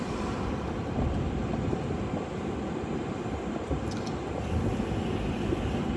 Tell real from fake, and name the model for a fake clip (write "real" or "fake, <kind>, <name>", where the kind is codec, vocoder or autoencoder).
fake, vocoder, BigVGAN v2